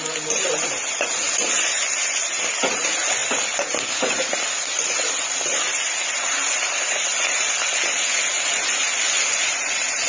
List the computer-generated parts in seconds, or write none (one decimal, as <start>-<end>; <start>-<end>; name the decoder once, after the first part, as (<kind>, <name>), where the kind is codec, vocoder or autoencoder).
3.2-7.3 (vocoder, BigVGAN v2)

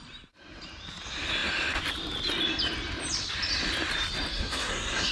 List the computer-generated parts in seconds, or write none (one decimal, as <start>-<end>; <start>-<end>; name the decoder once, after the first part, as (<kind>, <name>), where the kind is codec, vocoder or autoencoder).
4.3-5.1 (codec, SNAC)